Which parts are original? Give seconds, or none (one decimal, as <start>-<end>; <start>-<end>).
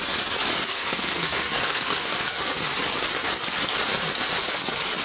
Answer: 0.0-0.7; 2.6-5.0